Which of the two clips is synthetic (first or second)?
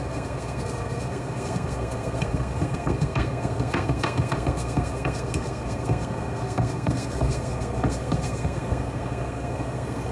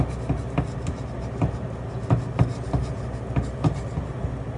first